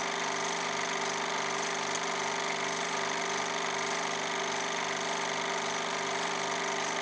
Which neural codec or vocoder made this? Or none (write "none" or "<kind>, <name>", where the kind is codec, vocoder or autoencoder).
none